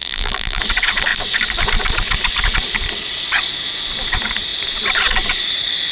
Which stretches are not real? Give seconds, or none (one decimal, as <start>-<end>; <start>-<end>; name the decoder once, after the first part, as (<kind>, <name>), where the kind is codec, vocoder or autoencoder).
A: 0.0-0.6 (vocoder, BigVGAN v2)